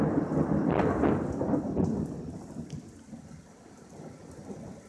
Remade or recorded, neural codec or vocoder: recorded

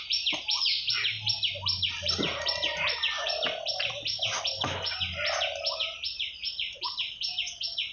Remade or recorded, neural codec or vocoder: recorded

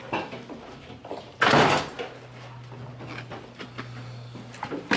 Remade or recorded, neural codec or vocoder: recorded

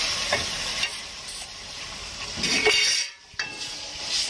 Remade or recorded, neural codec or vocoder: recorded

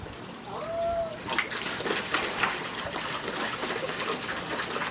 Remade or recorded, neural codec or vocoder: recorded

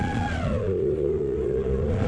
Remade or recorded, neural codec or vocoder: remade, vocoder, Vocos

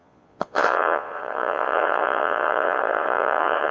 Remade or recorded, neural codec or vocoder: remade, vocoder, Vocos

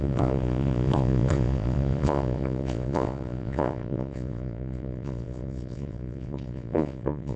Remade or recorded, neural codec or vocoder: remade, vocoder, Vocos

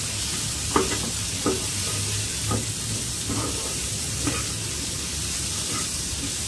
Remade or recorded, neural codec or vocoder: recorded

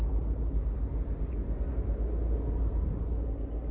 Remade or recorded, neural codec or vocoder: recorded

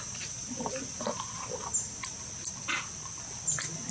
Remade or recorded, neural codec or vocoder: recorded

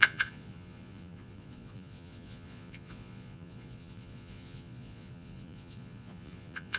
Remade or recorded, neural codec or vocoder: remade, vocoder, Vocos